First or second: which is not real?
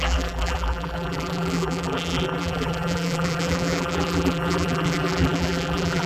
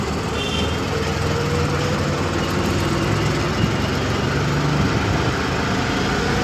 first